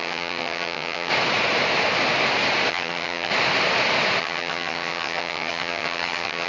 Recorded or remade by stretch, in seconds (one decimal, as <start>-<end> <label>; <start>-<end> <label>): 0.0-1.1 remade; 1.1-2.7 recorded; 2.7-3.3 remade; 3.3-4.2 recorded; 4.2-6.5 remade